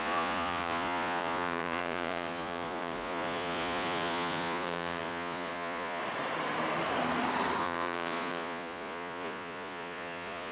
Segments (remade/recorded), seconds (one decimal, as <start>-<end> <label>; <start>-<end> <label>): 0.0-6.0 remade; 6.0-7.6 recorded; 7.6-10.5 remade